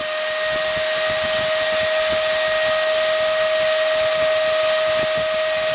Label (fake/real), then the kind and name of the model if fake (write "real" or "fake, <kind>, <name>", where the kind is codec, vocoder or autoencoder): real